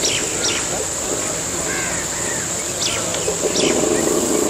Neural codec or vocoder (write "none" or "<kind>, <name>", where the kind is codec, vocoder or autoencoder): none